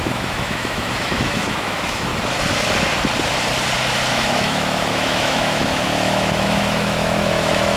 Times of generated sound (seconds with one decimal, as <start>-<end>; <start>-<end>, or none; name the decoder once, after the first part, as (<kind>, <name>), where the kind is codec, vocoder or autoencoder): 0.0-2.1 (autoencoder, DAC-VAE); 4.1-7.8